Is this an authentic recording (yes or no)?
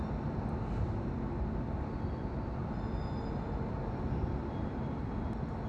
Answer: yes